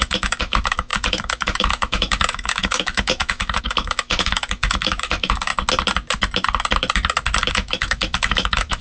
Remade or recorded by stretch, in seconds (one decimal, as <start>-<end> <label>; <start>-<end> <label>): 0.0-5.5 remade; 5.5-7.5 recorded; 7.5-8.8 remade